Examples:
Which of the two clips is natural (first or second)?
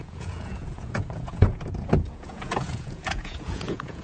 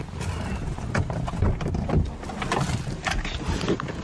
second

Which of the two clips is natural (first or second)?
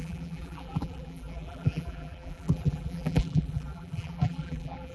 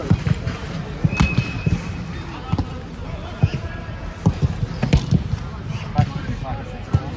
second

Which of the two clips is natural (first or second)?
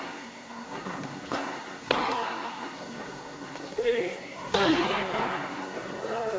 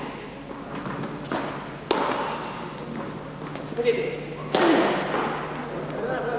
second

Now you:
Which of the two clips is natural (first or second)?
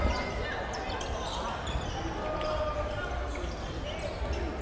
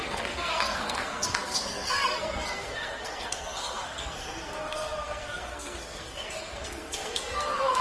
first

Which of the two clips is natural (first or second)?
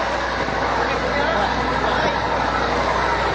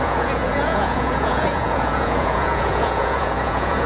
first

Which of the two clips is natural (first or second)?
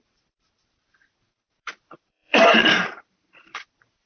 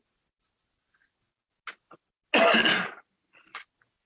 second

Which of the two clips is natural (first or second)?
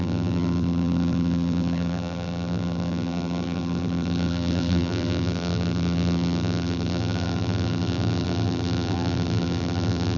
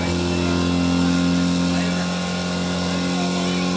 second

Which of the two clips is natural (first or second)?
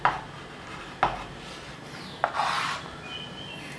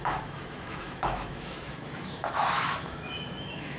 first